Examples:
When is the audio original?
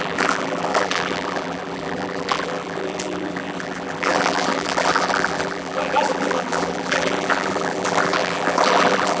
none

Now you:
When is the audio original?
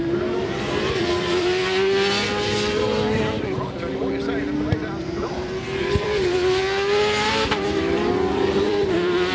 1.6-5.2; 6.6-7.3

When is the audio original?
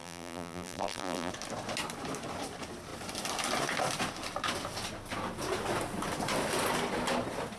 1.3-7.6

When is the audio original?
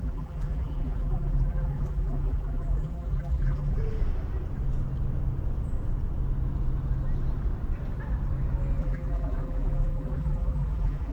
3.8-8.8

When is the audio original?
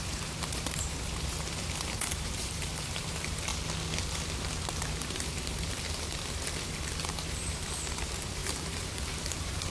3.5-4.9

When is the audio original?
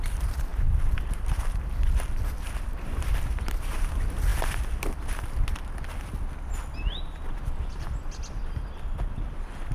4.3-9.1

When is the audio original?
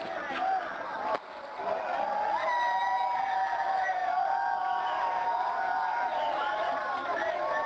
0.0-4.0